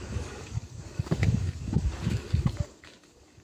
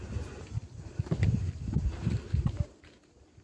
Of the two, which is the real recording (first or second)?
second